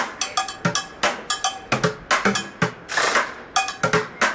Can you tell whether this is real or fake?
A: real